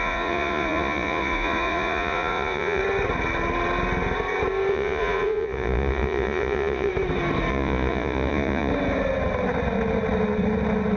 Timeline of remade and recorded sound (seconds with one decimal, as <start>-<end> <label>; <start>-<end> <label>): 0.0-2.8 remade; 2.8-4.7 recorded; 4.7-6.9 remade; 6.9-7.5 recorded; 7.5-8.7 remade; 8.7-11.0 recorded